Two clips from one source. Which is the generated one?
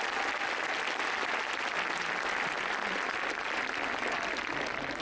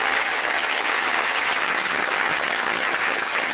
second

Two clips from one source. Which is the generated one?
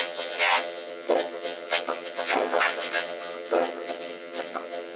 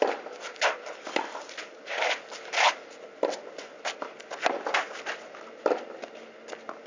first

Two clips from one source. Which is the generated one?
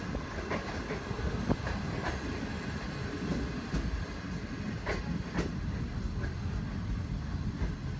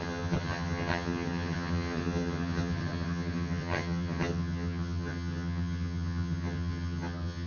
second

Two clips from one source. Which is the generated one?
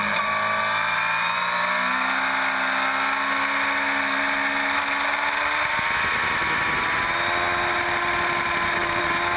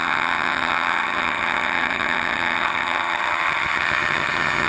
second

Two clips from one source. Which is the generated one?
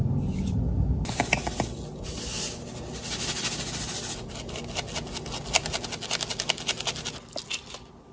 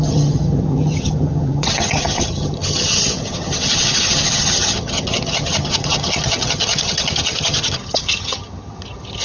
second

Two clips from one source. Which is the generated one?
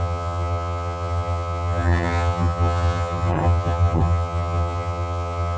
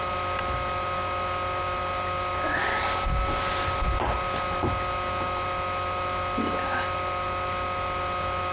first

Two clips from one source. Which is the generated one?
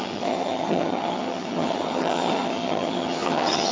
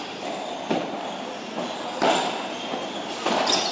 first